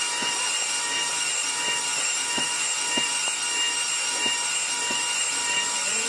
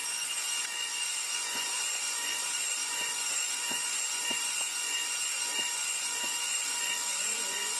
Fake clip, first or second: second